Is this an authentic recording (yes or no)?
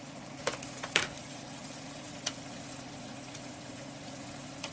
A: no